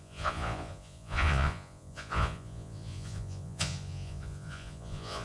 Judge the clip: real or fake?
fake